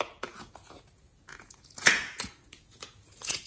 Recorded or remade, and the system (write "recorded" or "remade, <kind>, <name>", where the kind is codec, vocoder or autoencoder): remade, vocoder, Vocos